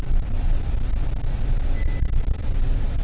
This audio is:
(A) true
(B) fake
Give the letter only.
A